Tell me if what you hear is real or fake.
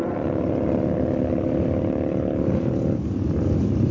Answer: real